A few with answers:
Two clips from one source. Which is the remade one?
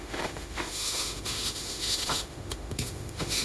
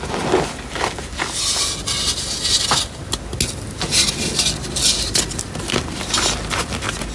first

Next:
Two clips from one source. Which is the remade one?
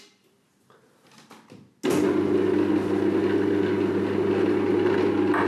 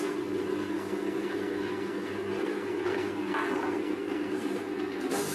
second